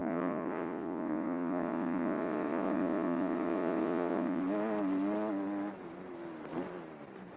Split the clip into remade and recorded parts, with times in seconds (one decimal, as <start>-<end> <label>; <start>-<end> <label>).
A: 0.0-4.4 remade; 4.4-7.4 recorded